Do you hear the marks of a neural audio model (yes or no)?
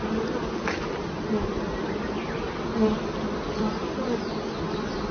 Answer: no